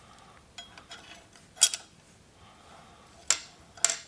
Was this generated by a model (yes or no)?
no